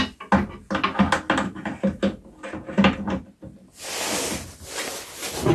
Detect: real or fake real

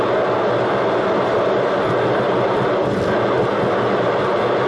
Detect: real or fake real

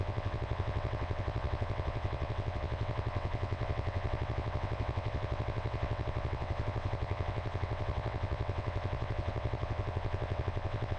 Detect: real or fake fake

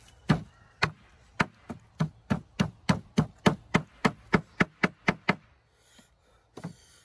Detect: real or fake real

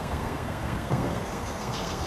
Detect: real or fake fake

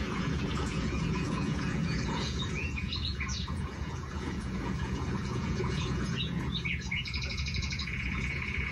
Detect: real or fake fake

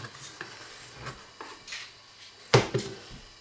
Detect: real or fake real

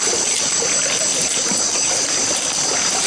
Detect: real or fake real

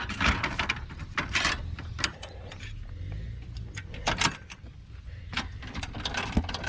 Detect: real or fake real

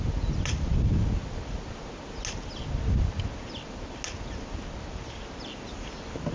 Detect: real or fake real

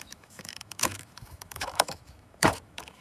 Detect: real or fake fake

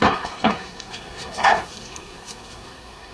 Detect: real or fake fake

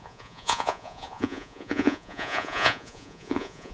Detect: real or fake fake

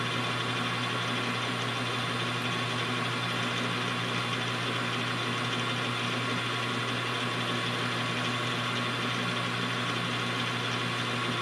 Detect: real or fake real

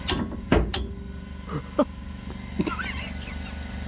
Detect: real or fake real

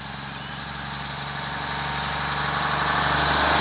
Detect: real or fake real